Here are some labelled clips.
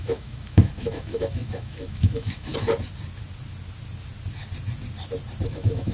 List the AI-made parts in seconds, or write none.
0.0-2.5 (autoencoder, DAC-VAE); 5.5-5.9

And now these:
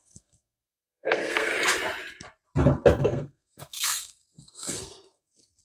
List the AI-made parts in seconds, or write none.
0.0-1.5 (codec, SNAC); 3.0-5.6